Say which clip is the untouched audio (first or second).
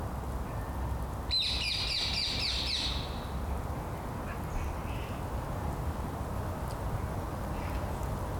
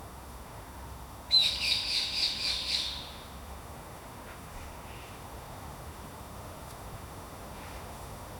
first